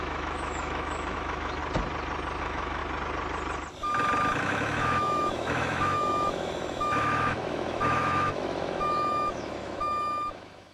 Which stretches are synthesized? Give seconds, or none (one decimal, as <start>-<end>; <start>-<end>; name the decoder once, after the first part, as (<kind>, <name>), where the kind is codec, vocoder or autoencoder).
0.0-1.6 (autoencoder, DAC-VAE); 2.4-2.8; 4.4-10.7